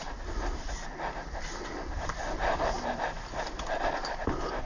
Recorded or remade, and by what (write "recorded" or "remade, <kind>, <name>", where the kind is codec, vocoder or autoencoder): recorded